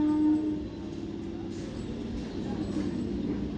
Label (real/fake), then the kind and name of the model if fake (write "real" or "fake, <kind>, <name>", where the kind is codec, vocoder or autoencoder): real